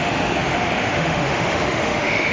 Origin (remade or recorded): remade